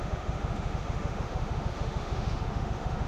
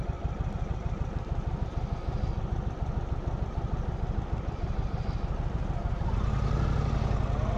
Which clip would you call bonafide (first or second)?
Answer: second